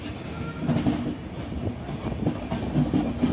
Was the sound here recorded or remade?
recorded